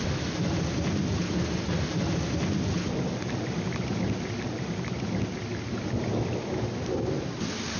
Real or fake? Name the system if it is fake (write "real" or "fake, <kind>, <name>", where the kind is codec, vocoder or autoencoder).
real